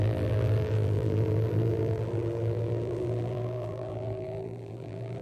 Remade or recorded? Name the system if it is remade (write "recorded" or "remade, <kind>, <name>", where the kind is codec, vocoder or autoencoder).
remade, vocoder, BigVGAN v2